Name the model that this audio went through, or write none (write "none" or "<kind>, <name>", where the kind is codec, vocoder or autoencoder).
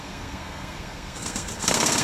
codec, SNAC